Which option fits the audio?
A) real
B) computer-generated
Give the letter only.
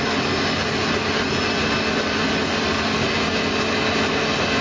A